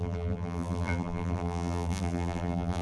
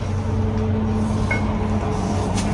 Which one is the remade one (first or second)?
first